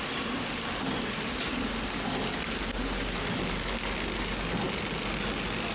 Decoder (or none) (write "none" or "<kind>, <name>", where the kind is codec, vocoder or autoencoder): none